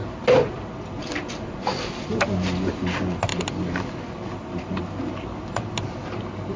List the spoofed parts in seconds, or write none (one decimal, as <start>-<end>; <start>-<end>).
none